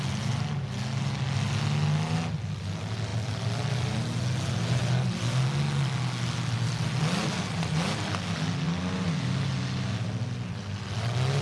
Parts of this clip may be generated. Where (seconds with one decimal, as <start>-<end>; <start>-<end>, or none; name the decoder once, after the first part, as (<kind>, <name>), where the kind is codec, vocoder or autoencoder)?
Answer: none

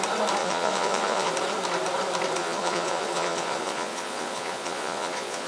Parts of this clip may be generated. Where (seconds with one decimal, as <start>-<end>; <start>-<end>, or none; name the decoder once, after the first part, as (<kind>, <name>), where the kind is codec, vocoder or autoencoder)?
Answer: 0.4-1.3 (vocoder, Vocos); 2.4-5.5